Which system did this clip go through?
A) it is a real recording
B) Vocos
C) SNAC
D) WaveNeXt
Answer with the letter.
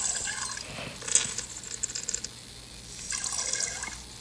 A